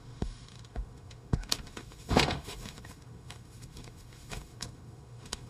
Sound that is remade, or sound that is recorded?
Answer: remade